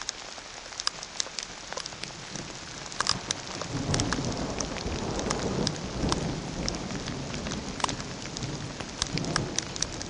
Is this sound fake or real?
real